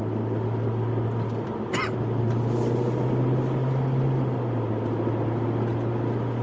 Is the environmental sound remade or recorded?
recorded